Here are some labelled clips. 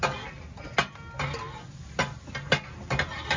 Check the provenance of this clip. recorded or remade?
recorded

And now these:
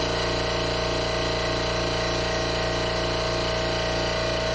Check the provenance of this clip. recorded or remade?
recorded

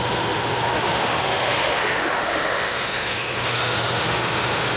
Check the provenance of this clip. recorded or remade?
remade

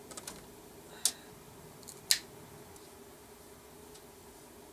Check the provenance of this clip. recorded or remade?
recorded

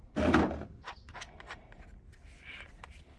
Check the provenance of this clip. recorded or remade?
recorded